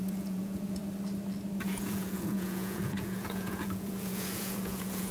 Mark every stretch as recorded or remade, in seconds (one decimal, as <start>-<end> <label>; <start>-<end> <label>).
0.0-0.8 remade; 0.8-1.6 recorded; 1.6-5.1 remade